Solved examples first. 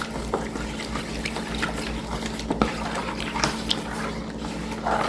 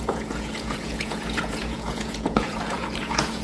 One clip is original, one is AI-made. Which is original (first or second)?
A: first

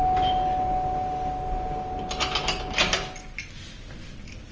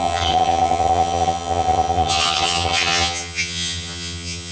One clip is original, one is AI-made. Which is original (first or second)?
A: first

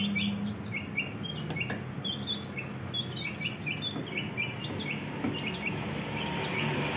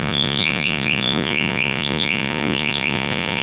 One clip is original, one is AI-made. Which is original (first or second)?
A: first